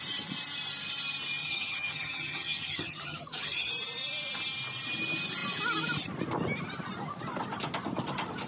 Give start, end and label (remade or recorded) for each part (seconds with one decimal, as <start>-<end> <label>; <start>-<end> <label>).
0.0-1.4 recorded; 1.4-3.7 remade; 3.7-8.5 recorded